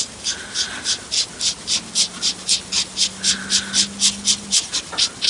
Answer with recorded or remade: recorded